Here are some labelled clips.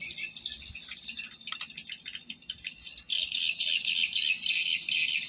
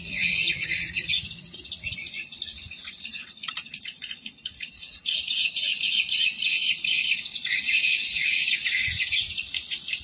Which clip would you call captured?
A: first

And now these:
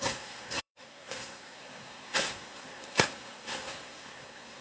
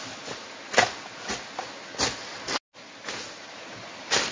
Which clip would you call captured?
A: second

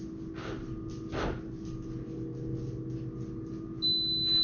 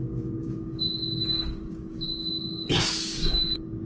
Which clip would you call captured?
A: first